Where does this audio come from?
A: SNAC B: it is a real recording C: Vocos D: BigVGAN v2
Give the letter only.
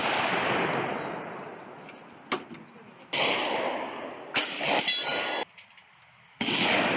B